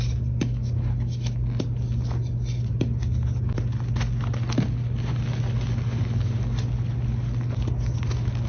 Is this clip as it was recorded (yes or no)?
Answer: yes